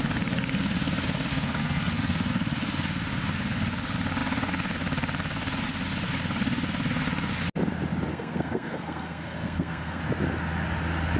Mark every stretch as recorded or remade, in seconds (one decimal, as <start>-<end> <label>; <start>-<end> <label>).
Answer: 0.0-1.3 recorded; 1.3-2.3 remade; 2.3-8.1 recorded; 8.1-10.0 remade; 10.0-11.2 recorded

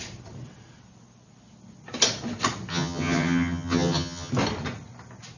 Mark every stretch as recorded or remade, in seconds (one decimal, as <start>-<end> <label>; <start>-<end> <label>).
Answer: 0.0-2.7 recorded; 2.7-4.3 remade; 4.3-5.4 recorded